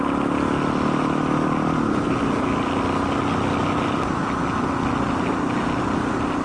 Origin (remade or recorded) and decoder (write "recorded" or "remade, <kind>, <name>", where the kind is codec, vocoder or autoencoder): recorded